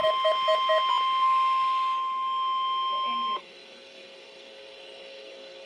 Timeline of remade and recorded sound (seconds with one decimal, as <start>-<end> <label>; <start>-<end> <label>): 0.0-3.4 recorded; 3.4-5.7 remade